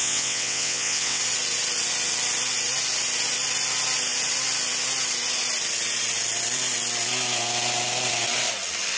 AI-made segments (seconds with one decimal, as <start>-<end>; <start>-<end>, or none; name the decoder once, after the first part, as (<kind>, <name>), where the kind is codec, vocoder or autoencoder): 0.0-1.2 (vocoder, WaveNeXt)